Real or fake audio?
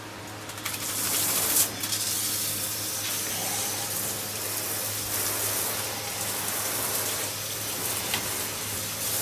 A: real